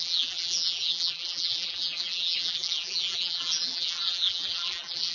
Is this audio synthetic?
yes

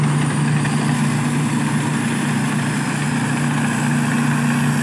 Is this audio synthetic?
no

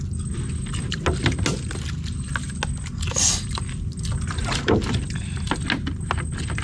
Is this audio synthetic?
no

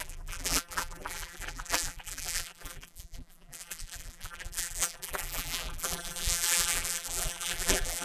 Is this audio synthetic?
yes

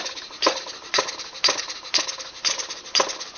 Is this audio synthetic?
yes